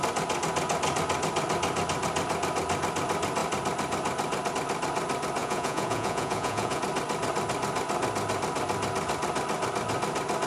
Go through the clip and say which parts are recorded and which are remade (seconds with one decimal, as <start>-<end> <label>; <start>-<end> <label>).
0.0-5.4 recorded; 5.4-6.8 remade; 6.8-10.5 recorded